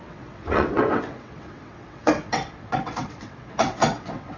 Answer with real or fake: fake